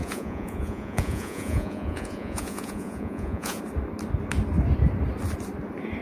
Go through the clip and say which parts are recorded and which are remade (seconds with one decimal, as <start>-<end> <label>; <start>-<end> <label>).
0.0-3.6 remade; 3.6-6.0 recorded